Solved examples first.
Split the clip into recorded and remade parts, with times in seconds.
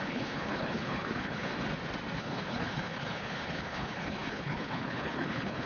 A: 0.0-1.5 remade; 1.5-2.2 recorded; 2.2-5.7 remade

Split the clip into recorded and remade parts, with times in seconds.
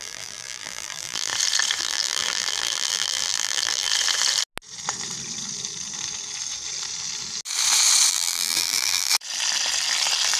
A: 0.0-1.3 remade; 1.3-1.8 recorded; 1.8-3.9 remade; 3.9-8.1 recorded; 8.1-9.1 remade; 9.1-10.4 recorded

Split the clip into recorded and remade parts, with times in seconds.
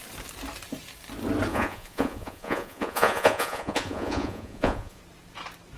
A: 0.0-1.5 recorded; 1.5-5.0 remade; 5.0-5.8 recorded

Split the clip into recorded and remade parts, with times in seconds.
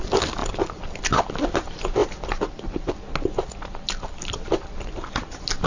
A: 0.0-0.4 recorded; 0.4-1.0 remade; 1.0-5.7 recorded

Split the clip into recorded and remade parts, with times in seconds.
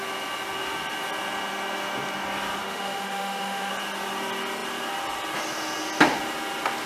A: 0.0-2.6 recorded; 2.6-3.7 remade; 3.7-6.9 recorded